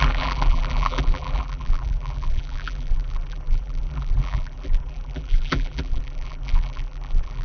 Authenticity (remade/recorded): remade